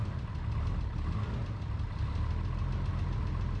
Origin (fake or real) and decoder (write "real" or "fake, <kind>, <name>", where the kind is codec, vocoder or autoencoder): real